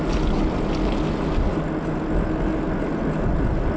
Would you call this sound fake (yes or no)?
no